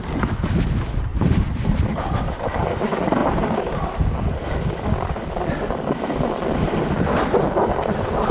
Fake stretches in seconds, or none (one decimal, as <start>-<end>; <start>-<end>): 1.1-2.0